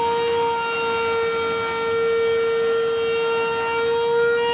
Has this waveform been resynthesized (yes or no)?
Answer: no